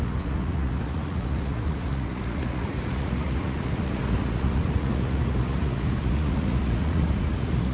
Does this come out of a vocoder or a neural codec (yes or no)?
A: yes